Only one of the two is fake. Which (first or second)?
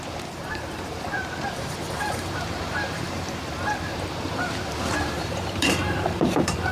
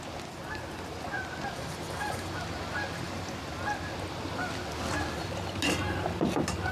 first